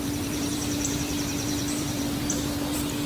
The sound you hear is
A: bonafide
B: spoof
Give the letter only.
B